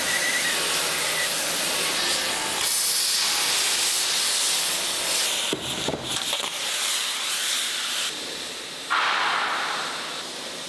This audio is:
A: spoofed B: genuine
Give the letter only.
B